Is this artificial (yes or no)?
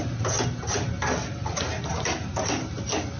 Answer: no